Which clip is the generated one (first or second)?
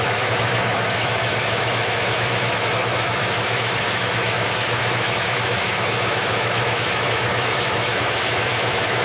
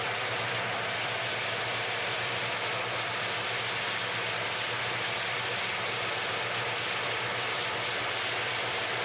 first